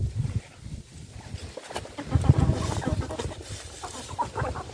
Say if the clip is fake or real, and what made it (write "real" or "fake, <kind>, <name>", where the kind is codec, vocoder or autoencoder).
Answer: real